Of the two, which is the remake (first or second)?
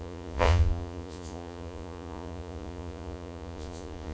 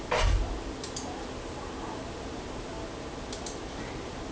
first